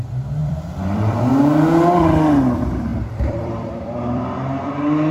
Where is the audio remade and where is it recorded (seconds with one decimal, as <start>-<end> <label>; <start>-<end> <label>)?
0.0-0.4 recorded; 0.4-1.3 remade; 1.3-2.9 recorded; 2.9-4.2 remade; 4.2-5.1 recorded